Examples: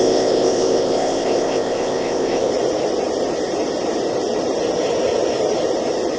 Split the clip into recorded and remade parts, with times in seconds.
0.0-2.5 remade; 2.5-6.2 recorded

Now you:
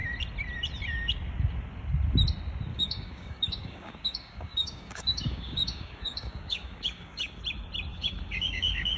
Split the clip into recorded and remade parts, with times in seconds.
0.0-2.7 recorded; 2.7-7.4 remade; 7.4-7.9 recorded; 7.9-9.0 remade

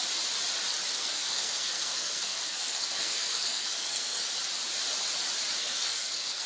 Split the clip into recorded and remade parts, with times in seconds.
0.0-0.9 recorded; 0.9-4.3 remade; 4.3-5.6 recorded; 5.6-6.5 remade

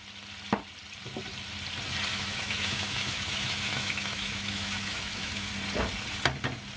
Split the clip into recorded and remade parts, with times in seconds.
0.0-2.1 recorded; 2.1-5.5 remade; 5.5-6.8 recorded

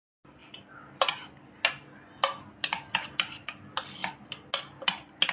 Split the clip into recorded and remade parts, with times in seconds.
0.0-5.3 recorded

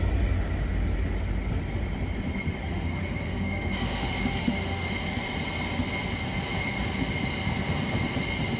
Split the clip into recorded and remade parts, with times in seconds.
0.0-2.7 recorded; 2.7-4.9 remade; 4.9-8.6 recorded